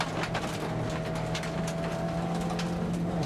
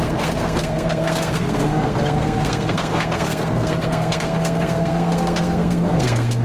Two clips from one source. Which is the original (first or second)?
first